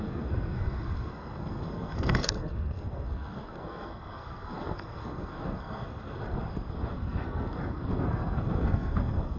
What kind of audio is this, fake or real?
fake